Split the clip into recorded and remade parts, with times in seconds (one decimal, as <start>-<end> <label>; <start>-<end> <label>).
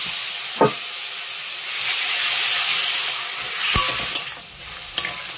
0.0-5.4 recorded